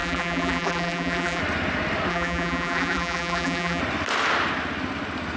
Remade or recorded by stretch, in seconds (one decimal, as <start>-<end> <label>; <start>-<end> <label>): 0.0-1.4 remade; 1.4-2.1 recorded; 2.1-3.8 remade; 3.8-5.4 recorded